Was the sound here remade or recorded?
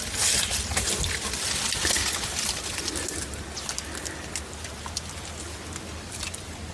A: recorded